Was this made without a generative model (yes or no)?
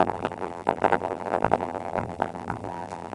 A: no